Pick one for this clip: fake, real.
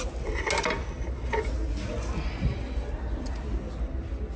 real